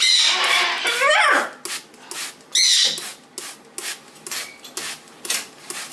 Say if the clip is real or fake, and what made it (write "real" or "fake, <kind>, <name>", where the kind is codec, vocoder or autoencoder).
real